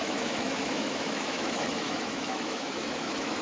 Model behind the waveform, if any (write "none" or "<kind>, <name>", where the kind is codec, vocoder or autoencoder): autoencoder, DAC-VAE